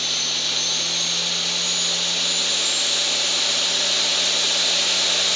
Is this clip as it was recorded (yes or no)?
yes